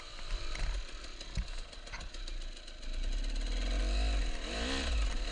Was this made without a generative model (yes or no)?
yes